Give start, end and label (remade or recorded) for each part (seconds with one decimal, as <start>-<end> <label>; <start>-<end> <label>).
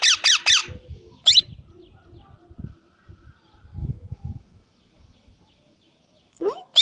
0.0-0.6 recorded; 0.6-1.3 remade; 1.3-3.8 recorded; 3.8-6.8 remade